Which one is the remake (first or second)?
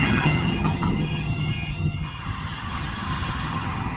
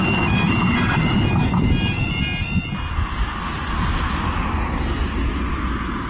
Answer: first